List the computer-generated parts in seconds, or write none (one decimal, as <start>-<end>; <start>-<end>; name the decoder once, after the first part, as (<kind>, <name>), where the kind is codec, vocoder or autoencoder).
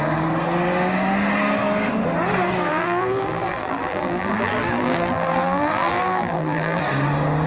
2.7-6.8 (vocoder, BigVGAN v2)